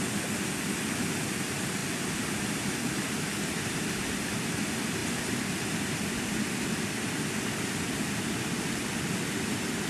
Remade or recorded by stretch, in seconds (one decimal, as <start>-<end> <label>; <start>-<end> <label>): 0.0-9.9 recorded